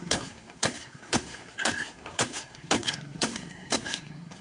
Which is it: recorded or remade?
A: remade